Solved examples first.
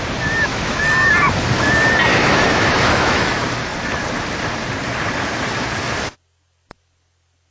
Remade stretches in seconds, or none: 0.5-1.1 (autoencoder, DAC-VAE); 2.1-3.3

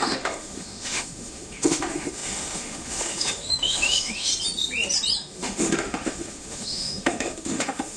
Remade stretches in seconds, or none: 0.0-4.3 (autoencoder, DAC-VAE); 5.2-8.0

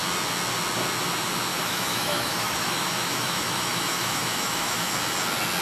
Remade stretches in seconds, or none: 1.5-4.9 (autoencoder, DAC-VAE)

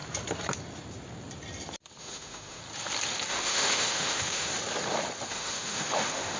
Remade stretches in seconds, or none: 2.0-2.6 (autoencoder, DAC-VAE); 3.3-4.5; 5.3-6.4